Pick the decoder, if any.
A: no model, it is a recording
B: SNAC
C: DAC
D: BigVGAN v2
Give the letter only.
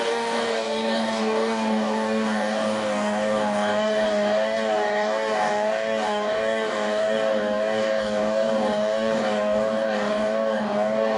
C